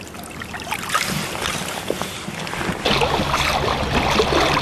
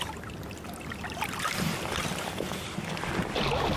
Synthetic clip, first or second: second